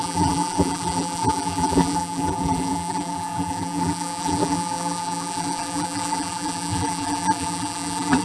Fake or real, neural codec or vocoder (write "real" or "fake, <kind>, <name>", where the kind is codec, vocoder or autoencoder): fake, vocoder, BigVGAN v2